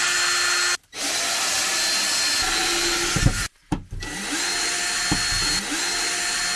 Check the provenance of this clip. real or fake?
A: real